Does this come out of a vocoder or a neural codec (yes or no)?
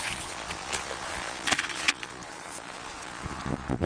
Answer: yes